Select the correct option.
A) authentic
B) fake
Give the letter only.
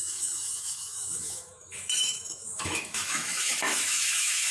B